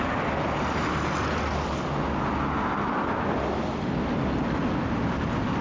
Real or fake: real